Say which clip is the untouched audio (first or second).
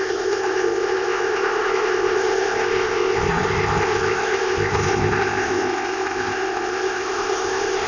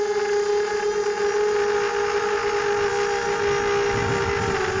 second